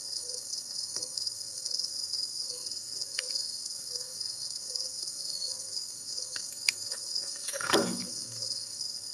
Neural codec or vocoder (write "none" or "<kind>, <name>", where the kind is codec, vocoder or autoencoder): codec, SNAC